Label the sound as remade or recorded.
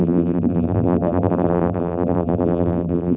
remade